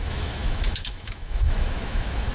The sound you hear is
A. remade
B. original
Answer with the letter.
A